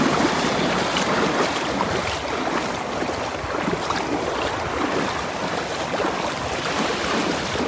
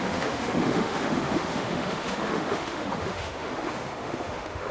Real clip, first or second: first